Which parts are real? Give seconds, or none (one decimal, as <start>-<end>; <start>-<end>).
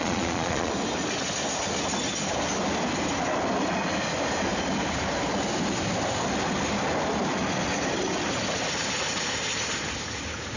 0.7-10.6